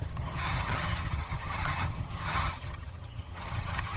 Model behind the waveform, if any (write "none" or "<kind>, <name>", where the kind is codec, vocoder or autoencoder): vocoder, HiFi-GAN